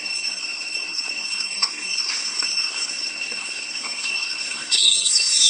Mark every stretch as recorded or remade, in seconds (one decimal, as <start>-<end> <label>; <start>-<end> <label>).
0.0-5.5 remade